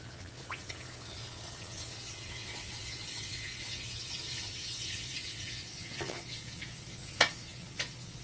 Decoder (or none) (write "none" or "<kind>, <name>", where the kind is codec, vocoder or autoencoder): vocoder, Vocos